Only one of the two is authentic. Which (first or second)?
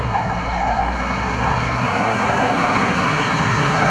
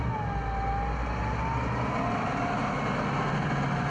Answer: second